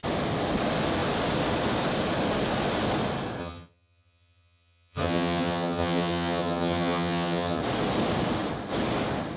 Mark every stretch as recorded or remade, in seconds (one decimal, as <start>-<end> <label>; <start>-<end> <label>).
0.0-3.4 recorded; 3.4-7.6 remade; 7.6-9.4 recorded